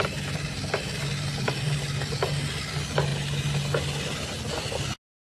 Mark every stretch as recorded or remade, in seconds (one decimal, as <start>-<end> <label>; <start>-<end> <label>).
0.0-5.3 recorded